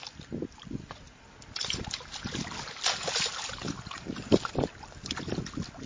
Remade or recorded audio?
recorded